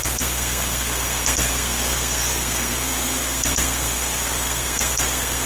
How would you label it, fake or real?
fake